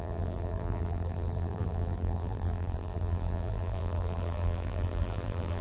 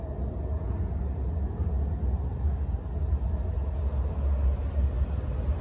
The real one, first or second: second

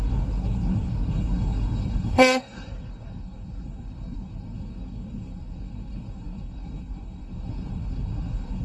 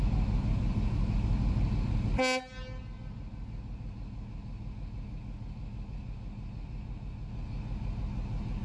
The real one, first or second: second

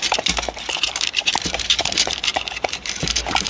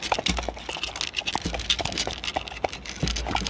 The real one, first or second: second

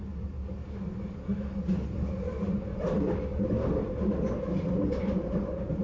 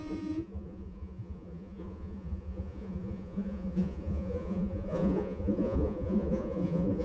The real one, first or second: first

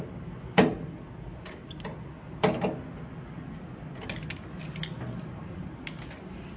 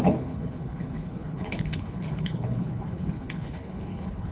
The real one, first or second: first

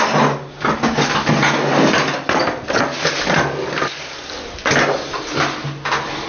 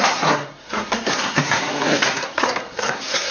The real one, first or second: first